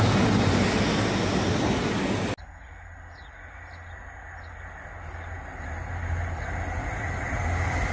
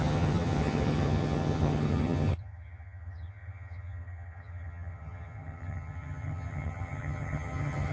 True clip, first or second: first